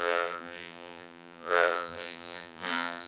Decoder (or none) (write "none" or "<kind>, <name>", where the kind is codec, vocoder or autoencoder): vocoder, BigVGAN v2